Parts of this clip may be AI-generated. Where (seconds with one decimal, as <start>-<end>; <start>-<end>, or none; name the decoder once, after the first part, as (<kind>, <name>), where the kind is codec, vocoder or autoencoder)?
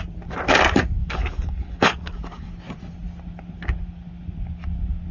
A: 1.0-2.5 (codec, DAC)